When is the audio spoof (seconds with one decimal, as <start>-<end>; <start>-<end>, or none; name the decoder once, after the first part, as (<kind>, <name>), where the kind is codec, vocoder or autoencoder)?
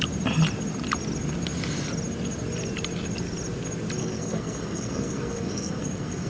4.0-6.3 (codec, SNAC)